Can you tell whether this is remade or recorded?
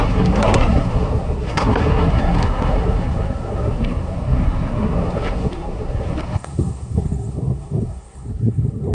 remade